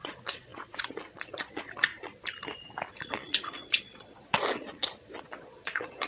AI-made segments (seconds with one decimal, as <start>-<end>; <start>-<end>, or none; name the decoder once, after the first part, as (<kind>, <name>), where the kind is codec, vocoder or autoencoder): 0.0-1.9 (vocoder, Vocos); 2.9-6.1